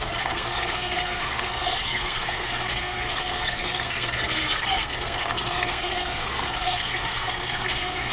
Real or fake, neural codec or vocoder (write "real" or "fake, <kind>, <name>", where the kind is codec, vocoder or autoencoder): fake, codec, SNAC